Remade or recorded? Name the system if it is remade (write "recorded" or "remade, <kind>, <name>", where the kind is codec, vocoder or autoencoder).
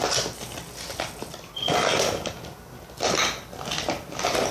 recorded